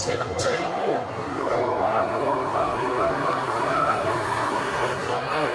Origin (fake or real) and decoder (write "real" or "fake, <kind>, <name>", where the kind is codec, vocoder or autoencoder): fake, codec, SNAC